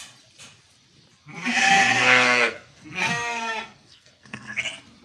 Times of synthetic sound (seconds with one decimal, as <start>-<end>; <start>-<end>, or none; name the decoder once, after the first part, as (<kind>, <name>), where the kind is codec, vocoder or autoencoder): 1.6-4.6 (codec, SNAC)